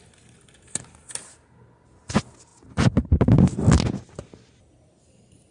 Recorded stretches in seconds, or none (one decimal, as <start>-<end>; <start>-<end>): 0.0-5.5